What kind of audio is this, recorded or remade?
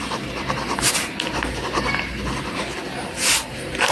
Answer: recorded